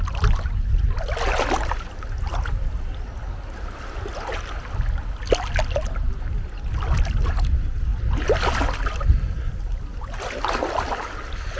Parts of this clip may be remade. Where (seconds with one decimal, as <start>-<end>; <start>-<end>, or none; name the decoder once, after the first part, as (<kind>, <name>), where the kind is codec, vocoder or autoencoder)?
none